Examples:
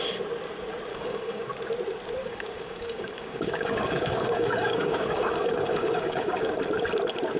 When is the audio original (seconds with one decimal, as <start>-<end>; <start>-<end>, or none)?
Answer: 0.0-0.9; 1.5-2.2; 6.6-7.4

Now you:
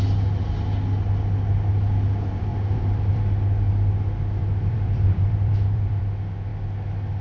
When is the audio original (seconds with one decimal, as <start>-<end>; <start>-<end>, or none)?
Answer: 0.0-2.5; 3.2-4.4; 6.0-7.2

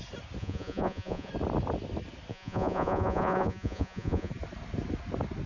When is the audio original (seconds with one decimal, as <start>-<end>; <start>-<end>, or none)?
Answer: 0.0-0.4; 1.3-2.3; 4.3-5.5